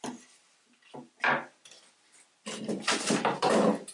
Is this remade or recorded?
recorded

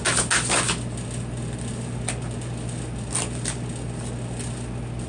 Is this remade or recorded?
recorded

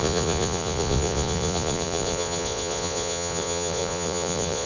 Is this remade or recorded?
remade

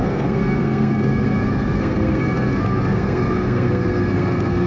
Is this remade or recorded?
remade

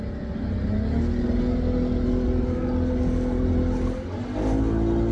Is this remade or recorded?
recorded